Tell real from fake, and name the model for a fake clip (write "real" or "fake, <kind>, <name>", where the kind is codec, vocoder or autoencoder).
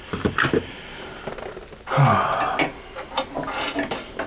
real